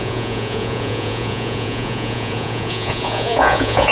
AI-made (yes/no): yes